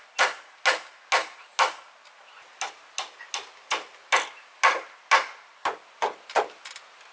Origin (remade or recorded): recorded